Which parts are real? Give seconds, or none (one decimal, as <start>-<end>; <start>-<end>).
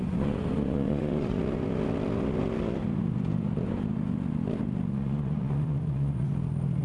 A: 1.4-4.9; 6.3-6.8